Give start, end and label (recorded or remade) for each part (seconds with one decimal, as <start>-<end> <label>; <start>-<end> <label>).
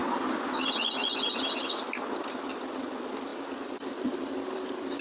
0.0-5.0 recorded